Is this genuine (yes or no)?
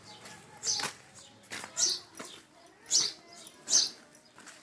yes